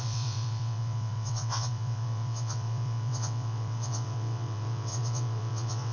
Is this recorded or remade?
remade